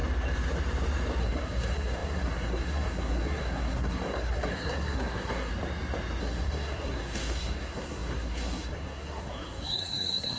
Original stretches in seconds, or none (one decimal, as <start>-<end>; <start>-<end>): 0.0-1.2; 5.5-6.2